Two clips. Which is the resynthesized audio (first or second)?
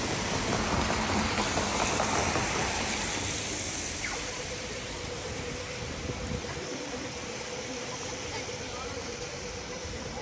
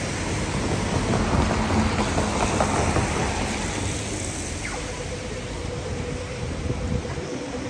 first